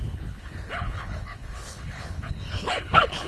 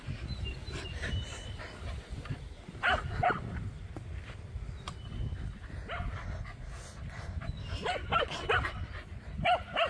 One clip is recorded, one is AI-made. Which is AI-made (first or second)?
first